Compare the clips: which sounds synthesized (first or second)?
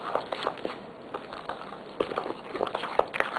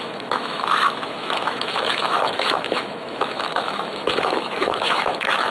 second